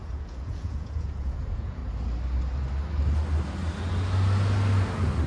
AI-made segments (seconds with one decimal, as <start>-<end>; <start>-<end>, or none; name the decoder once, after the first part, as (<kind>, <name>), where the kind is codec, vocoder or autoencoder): 0.0-1.8 (vocoder, Vocos)